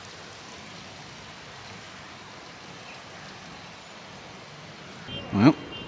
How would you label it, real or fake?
real